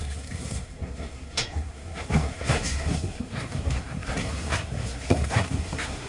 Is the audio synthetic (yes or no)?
yes